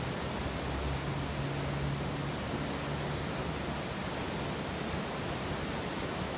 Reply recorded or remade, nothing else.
recorded